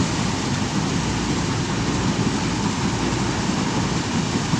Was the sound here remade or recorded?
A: recorded